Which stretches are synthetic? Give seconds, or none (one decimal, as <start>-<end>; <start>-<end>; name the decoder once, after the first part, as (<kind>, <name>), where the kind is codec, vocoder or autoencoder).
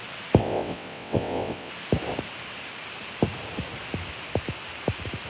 0.4-1.7 (vocoder, WaveNeXt)